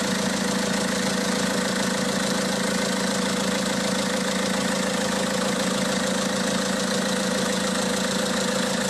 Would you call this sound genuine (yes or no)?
yes